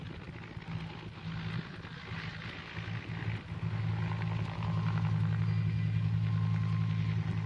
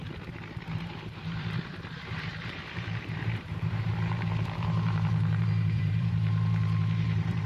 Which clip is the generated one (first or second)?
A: second